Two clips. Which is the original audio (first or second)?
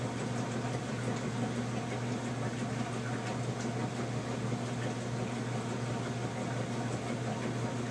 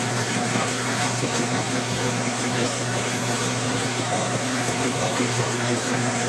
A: first